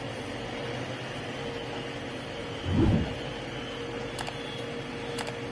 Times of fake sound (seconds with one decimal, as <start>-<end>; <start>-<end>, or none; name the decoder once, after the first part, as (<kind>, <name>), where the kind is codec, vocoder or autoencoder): 2.4-3.6 (vocoder, BigVGAN v2)